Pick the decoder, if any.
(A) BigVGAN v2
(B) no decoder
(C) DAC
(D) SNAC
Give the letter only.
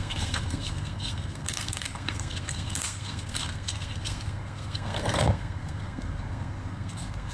D